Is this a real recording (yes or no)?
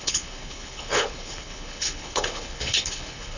no